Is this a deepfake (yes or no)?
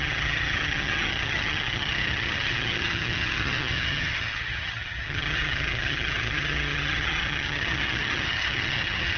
yes